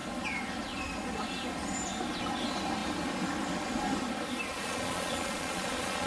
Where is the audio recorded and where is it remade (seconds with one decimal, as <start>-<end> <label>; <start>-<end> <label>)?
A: 0.0-4.5 recorded; 4.5-6.1 remade